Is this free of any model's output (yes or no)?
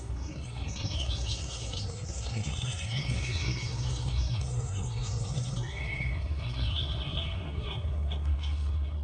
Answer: no